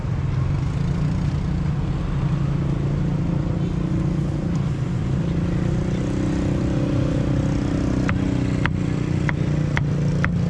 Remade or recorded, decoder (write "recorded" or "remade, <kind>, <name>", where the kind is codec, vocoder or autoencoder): recorded